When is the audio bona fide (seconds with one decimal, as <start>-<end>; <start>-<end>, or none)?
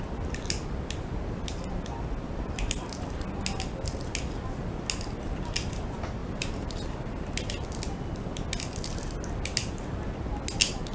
0.0-6.2; 7.1-10.9